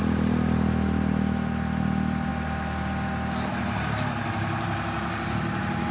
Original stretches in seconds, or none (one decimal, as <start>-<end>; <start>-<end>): 0.0-5.9